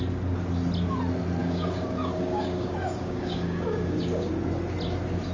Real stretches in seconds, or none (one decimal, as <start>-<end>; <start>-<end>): 0.0-1.4; 4.3-5.3